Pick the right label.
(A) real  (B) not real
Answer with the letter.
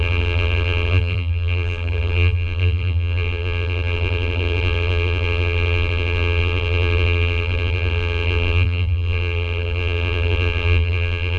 B